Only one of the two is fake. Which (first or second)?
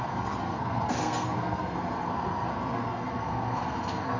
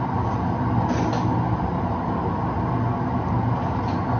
first